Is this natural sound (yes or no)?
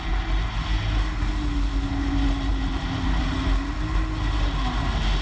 yes